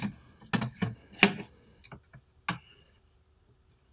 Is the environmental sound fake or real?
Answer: real